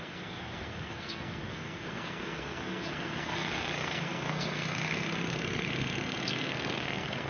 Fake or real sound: fake